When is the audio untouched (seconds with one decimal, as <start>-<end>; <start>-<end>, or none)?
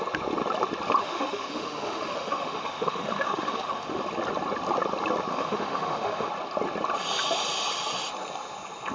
0.0-1.0; 4.0-5.3; 6.3-8.9